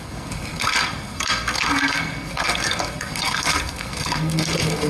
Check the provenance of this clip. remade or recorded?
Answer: remade